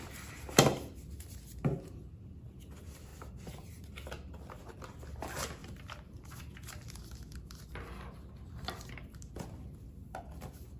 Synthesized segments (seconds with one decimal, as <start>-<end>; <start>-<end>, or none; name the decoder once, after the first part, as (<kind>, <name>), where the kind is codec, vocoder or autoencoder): none